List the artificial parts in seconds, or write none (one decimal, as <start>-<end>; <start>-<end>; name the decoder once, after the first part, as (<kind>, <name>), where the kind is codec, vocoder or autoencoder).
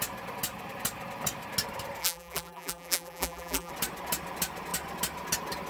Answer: 2.0-3.7 (vocoder, BigVGAN v2)